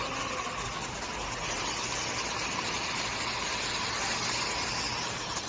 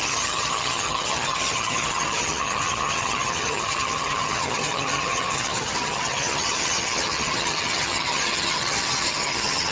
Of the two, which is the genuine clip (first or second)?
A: first